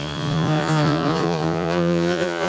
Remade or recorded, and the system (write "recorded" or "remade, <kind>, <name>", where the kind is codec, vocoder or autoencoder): remade, vocoder, Vocos